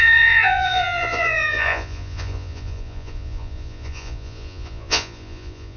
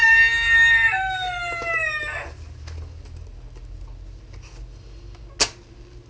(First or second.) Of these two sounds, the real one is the second